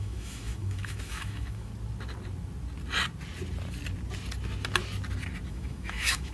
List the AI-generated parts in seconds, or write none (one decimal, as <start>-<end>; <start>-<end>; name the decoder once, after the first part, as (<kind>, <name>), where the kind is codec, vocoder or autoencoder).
0.0-1.7 (autoencoder, DAC-VAE); 5.5-6.3